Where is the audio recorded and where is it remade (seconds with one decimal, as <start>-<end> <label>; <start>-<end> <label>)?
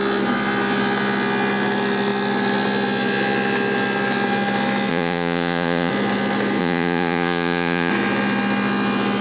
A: 0.0-4.9 recorded; 4.9-5.9 remade; 5.9-6.6 recorded; 6.6-7.9 remade; 7.9-9.2 recorded